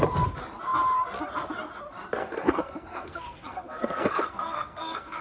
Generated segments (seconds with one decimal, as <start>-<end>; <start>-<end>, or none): 2.2-5.2